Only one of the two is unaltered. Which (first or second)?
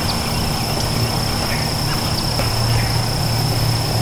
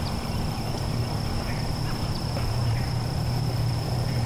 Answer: first